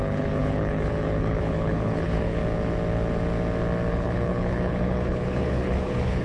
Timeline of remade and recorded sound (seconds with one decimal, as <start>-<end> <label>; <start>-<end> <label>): 0.0-2.4 remade; 2.4-3.9 recorded; 3.9-6.2 remade